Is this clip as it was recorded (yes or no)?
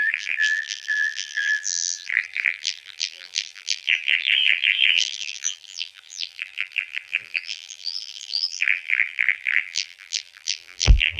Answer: no